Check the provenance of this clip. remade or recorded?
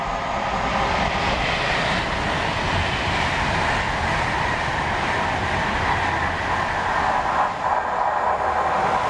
recorded